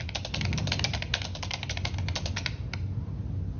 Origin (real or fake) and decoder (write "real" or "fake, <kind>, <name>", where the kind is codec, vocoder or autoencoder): real